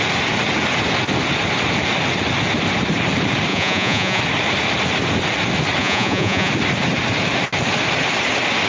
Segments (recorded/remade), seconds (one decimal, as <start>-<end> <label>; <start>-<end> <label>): 0.0-3.5 recorded; 3.5-4.2 remade; 4.2-5.8 recorded; 5.8-6.5 remade; 6.5-8.7 recorded